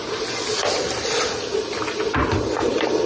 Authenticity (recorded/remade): recorded